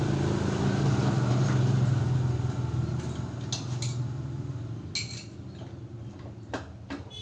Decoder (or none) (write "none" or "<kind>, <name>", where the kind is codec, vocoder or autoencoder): none